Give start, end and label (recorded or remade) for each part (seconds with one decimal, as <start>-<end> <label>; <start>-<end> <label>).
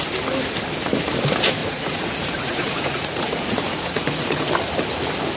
0.0-1.6 recorded; 1.6-4.5 remade; 4.5-5.4 recorded